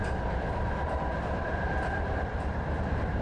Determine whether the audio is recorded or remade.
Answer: recorded